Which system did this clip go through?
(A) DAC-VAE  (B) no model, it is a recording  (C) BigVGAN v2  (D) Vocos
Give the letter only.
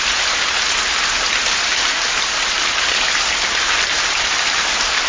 B